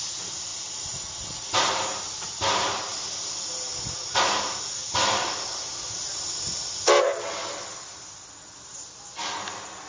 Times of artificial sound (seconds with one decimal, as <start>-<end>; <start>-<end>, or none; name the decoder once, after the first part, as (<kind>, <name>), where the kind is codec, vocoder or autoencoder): none